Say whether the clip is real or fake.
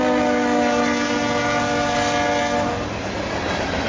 real